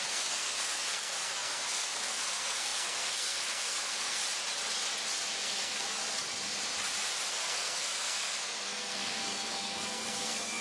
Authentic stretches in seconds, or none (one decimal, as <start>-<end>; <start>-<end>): 4.2-5.4; 6.0-7.3